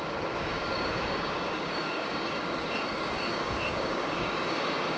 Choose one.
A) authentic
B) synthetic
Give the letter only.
B